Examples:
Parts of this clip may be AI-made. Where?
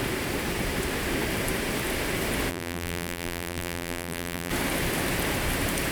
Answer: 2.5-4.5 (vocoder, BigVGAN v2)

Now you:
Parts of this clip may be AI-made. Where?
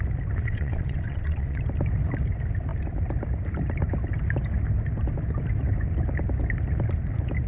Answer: 0.4-1.6 (vocoder, WaveNeXt)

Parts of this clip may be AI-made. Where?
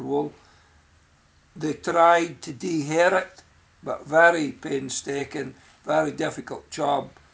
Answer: 1.9-3.5 (codec, DAC)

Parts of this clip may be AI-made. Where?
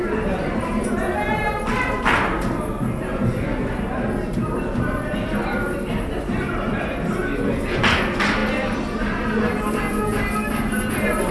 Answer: none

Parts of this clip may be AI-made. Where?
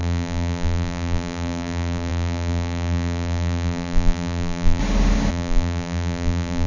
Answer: 0.0-4.8 (vocoder, BigVGAN v2); 5.3-6.7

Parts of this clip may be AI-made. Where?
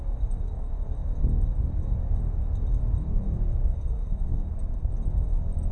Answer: 3.6-4.9 (codec, SNAC)